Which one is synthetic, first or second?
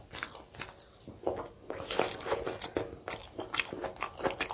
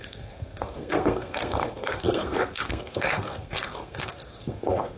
second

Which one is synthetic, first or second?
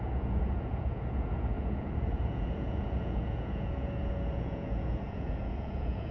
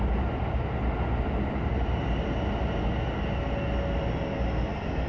first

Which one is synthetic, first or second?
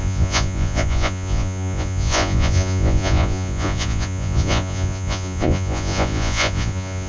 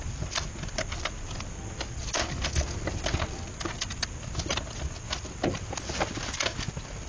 first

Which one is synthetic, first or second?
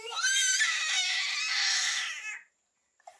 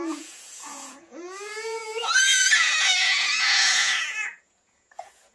second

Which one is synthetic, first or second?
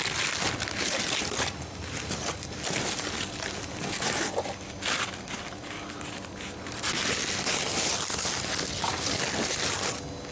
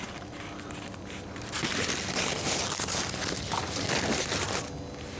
second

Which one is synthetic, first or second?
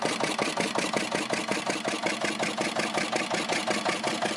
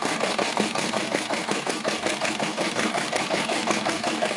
second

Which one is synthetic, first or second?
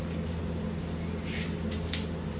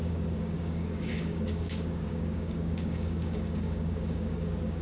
second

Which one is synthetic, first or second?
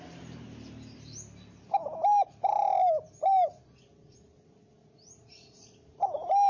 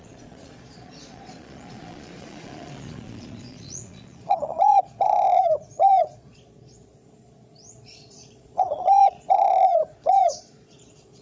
second